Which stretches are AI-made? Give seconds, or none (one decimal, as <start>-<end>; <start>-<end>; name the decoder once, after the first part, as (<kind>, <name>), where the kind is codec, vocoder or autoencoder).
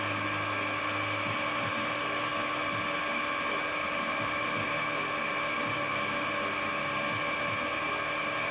none